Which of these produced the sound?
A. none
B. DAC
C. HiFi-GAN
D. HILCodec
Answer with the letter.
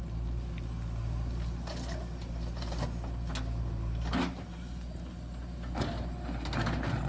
A